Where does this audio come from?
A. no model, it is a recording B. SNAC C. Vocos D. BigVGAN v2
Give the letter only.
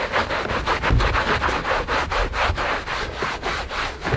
A